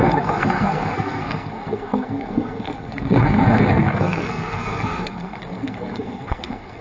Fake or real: fake